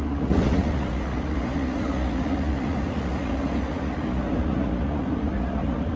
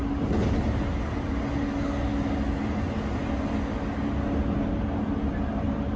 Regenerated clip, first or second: first